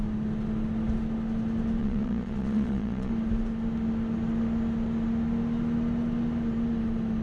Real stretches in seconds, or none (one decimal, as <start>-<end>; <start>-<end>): 0.0-1.8; 3.1-7.2